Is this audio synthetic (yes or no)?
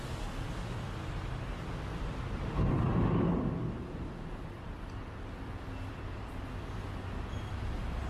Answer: no